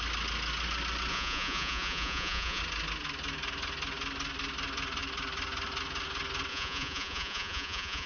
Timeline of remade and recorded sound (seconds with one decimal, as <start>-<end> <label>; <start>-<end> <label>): 0.0-1.1 recorded; 1.1-2.6 remade; 2.6-6.5 recorded; 6.5-8.1 remade